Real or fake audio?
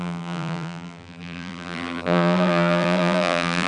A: fake